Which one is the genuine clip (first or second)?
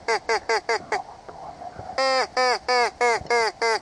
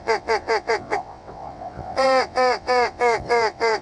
first